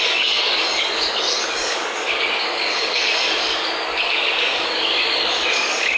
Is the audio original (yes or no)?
no